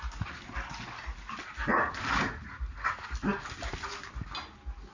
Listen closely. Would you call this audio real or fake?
real